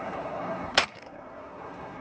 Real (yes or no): no